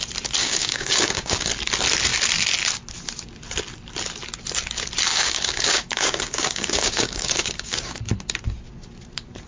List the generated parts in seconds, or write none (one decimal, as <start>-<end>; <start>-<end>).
0.4-1.5; 5.1-8.0